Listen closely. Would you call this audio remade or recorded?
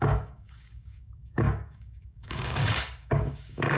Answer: remade